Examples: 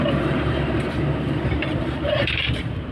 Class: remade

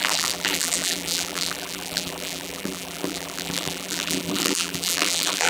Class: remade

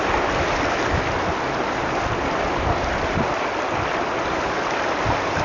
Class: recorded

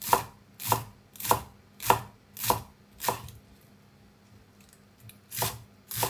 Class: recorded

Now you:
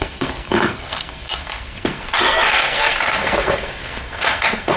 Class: remade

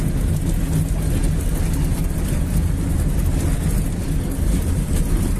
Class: recorded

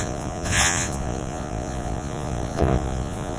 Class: remade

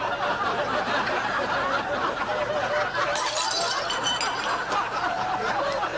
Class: recorded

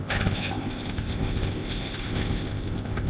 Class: remade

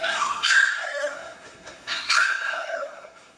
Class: remade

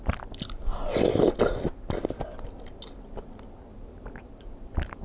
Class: recorded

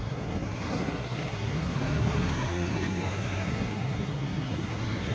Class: remade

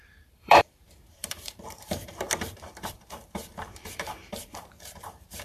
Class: remade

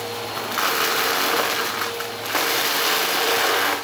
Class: recorded